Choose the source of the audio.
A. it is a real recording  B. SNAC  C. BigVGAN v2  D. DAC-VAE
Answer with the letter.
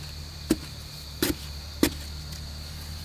A